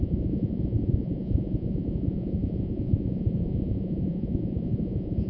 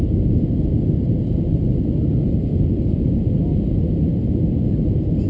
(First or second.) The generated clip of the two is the first